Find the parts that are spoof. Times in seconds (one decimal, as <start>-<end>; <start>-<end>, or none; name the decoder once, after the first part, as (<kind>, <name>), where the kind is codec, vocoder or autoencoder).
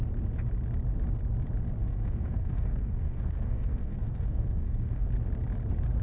1.8-5.1 (codec, SNAC)